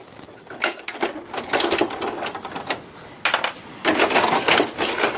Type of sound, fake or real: real